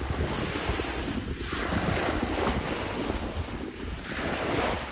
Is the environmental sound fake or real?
real